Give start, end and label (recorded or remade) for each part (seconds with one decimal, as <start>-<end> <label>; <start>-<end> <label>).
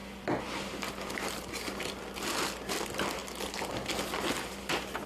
0.0-5.1 recorded